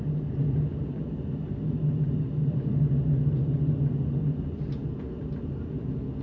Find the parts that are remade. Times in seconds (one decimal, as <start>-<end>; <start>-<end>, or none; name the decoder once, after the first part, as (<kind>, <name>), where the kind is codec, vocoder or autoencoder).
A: none